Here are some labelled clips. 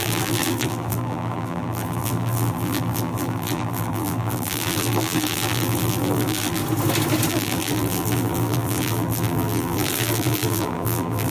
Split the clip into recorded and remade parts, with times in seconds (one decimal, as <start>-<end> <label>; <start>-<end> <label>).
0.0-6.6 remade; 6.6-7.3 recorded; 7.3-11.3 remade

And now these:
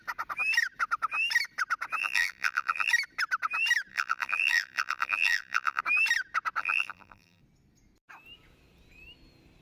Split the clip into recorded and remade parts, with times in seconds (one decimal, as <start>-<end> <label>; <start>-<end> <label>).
0.0-2.0 recorded; 2.0-2.9 remade; 2.9-3.9 recorded; 3.9-5.8 remade; 5.8-6.6 recorded; 6.6-7.4 remade; 7.4-9.6 recorded

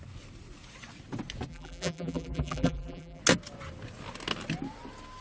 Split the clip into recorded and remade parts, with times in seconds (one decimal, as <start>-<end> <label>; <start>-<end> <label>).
0.0-1.5 recorded; 1.5-3.2 remade; 3.2-5.2 recorded

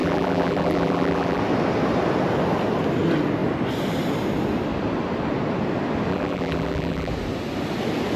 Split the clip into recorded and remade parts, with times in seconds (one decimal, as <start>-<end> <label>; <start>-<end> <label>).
0.0-1.4 remade; 1.4-6.1 recorded; 6.1-7.1 remade; 7.1-8.2 recorded

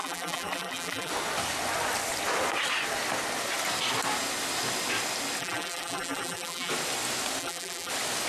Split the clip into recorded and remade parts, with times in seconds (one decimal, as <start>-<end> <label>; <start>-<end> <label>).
0.0-1.1 remade; 1.1-5.4 recorded; 5.4-6.7 remade; 6.7-7.4 recorded; 7.4-7.9 remade; 7.9-8.3 recorded

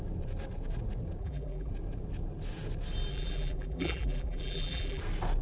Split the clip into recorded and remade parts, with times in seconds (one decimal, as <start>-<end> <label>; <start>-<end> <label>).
0.0-1.2 recorded; 1.2-1.7 remade; 1.7-3.1 recorded; 3.1-5.0 remade; 5.0-5.4 recorded

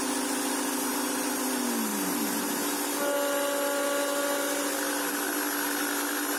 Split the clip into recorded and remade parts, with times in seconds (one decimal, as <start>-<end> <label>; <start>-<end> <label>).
0.0-6.4 recorded

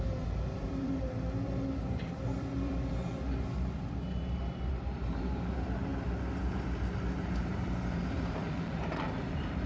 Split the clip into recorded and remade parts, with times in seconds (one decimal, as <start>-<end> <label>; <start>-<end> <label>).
0.0-5.9 remade; 5.9-7.2 recorded; 7.2-9.7 remade